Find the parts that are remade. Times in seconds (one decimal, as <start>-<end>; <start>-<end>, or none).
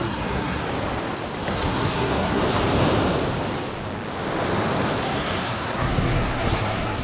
0.0-0.6; 1.5-2.4; 5.0-7.0